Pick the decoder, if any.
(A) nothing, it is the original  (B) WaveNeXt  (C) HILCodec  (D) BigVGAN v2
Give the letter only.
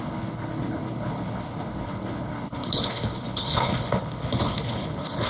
C